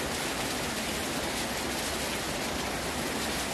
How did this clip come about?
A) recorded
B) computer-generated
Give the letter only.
A